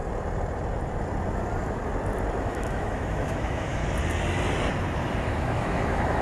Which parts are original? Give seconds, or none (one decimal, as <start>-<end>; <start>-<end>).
0.0-2.4; 3.8-5.3